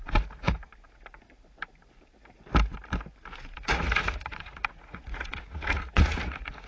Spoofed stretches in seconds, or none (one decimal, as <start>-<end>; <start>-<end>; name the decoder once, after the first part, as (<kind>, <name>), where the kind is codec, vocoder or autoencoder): 0.0-0.7 (vocoder, Vocos); 3.4-6.7